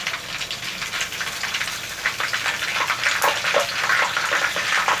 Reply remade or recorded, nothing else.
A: recorded